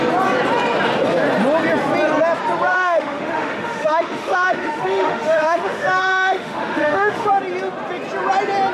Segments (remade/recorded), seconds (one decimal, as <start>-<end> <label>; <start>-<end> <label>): 0.0-2.7 recorded; 2.7-7.3 remade; 7.3-8.7 recorded